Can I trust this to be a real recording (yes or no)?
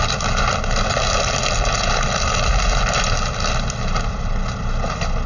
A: yes